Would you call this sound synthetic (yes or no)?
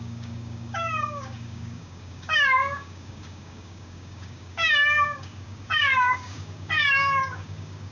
yes